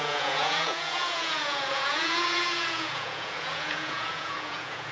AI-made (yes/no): yes